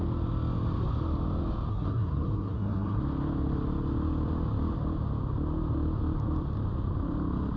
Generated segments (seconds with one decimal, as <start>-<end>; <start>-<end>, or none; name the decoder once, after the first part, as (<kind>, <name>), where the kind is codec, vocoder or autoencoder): 1.7-3.0 (codec, SNAC)